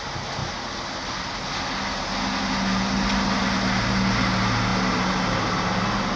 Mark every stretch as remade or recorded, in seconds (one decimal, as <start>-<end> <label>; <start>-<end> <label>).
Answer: 0.0-6.2 recorded